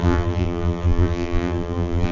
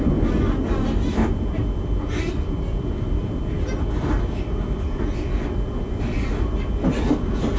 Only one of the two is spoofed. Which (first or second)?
first